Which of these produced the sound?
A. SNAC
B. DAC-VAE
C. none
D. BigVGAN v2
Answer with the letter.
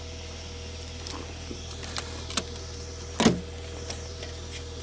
C